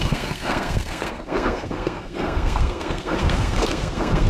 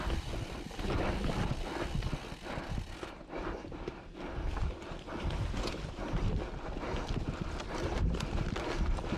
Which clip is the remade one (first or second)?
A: first